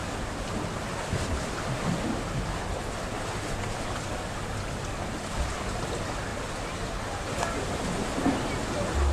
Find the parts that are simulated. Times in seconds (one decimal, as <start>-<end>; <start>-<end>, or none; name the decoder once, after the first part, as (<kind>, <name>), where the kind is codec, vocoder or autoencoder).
none